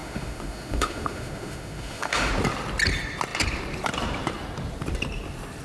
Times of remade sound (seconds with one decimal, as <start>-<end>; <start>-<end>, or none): 0.0-2.3